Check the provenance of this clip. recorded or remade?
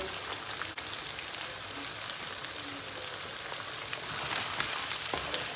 recorded